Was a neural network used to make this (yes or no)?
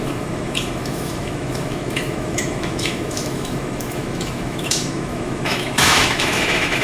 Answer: yes